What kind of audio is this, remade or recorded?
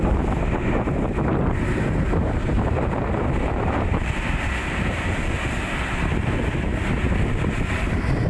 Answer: remade